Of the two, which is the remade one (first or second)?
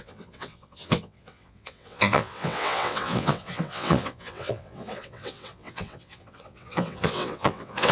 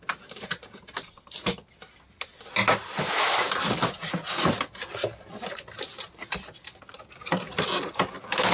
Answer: first